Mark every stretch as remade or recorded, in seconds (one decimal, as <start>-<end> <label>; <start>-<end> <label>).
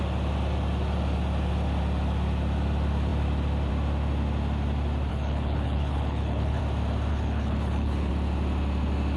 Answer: 0.0-5.1 recorded; 5.1-6.6 remade; 6.6-7.1 recorded; 7.1-8.1 remade; 8.1-9.2 recorded